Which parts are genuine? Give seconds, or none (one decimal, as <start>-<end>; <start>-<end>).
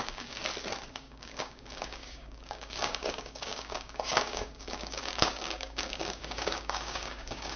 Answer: 0.4-0.9